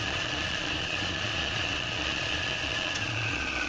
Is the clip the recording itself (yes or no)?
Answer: no